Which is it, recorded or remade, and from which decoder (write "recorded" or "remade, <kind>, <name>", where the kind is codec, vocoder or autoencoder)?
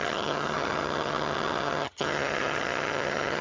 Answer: remade, vocoder, HiFi-GAN